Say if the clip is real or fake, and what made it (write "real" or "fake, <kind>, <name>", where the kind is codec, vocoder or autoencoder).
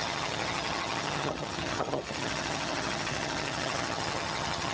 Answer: fake, vocoder, HiFi-GAN